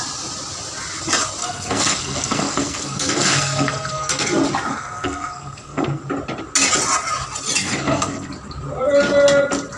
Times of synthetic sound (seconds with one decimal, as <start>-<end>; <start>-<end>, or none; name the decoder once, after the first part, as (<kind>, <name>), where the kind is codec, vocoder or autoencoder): 1.4-4.3 (codec, SNAC); 4.7-6.0; 7.6-8.3